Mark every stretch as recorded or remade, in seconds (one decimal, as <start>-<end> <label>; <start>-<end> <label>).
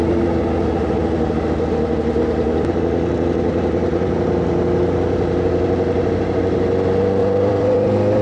0.0-7.2 recorded; 7.2-8.2 remade